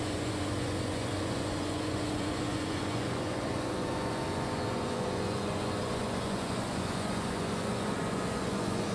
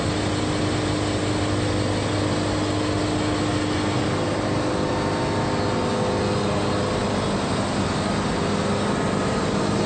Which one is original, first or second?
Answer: second